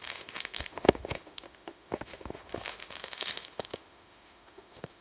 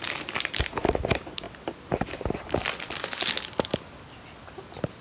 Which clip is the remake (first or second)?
first